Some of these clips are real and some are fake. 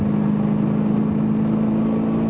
real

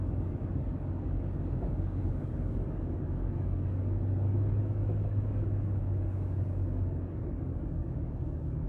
fake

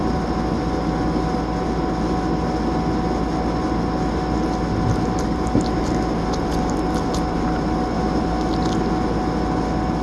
real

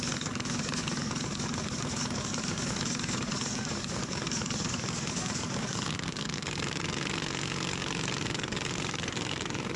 fake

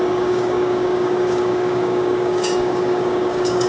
fake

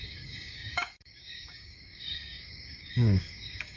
fake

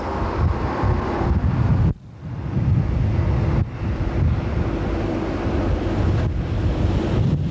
real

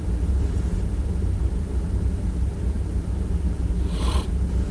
real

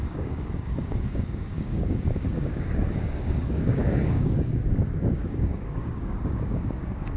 fake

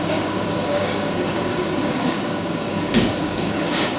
fake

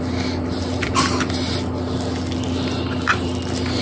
real